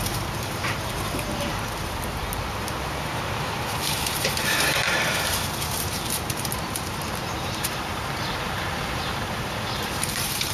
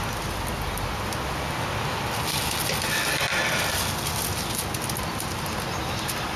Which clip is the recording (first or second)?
second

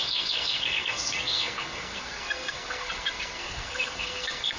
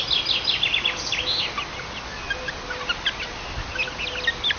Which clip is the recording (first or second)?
second